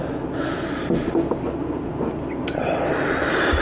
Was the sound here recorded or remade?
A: recorded